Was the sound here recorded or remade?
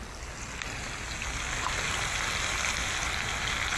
recorded